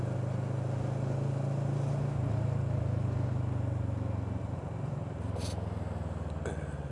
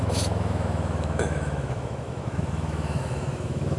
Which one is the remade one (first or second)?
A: second